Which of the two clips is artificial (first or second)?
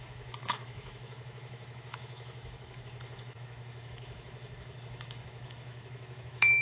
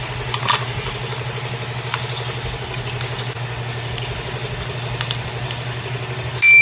first